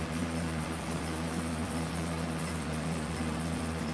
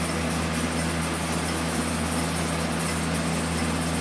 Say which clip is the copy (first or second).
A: first